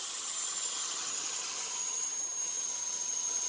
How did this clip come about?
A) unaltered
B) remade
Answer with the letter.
B